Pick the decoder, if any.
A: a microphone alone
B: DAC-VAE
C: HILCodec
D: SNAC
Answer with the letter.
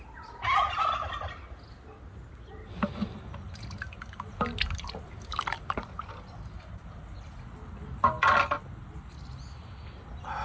A